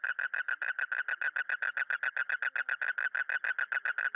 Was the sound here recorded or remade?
recorded